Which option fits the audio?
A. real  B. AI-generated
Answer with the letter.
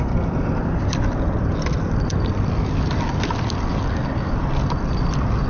A